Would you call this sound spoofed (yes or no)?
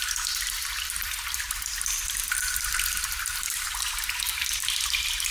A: yes